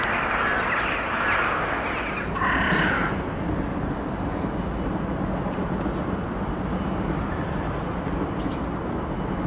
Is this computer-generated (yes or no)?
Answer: no